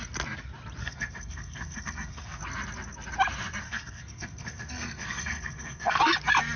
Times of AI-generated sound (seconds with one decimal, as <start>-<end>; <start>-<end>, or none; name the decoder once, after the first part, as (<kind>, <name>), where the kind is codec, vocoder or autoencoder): 0.8-2.4 (codec, SNAC); 3.6-6.0